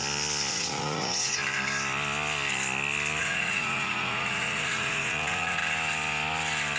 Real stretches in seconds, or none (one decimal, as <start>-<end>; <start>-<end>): 0.0-0.5; 1.4-3.2; 5.6-6.8